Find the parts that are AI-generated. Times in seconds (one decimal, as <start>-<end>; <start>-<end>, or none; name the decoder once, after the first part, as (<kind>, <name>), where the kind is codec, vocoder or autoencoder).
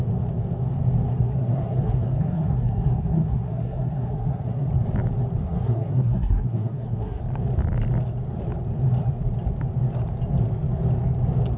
1.1-4.7 (codec, SNAC); 5.4-7.2